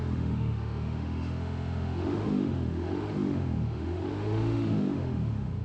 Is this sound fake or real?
fake